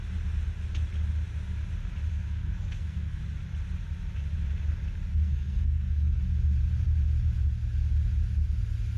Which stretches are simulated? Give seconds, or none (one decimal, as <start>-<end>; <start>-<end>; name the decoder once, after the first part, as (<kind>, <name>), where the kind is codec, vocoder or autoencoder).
2.1-3.2 (codec, SNAC); 5.1-6.2